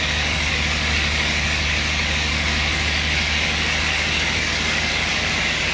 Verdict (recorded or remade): remade